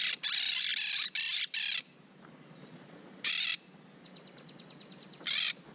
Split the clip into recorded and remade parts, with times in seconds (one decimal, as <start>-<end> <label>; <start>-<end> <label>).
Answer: 0.0-2.6 recorded; 2.6-3.3 remade; 3.3-5.7 recorded